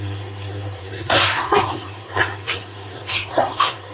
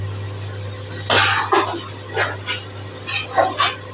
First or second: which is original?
second